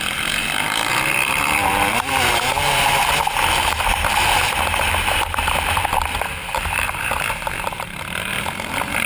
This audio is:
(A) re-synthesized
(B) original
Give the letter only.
A